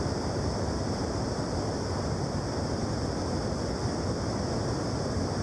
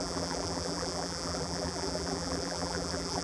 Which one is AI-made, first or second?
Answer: second